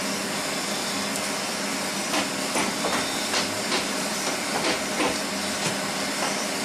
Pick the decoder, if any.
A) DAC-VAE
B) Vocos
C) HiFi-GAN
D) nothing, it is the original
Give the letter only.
D